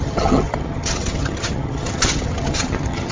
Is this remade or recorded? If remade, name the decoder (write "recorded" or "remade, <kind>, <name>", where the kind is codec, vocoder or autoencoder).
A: remade, vocoder, HiFi-GAN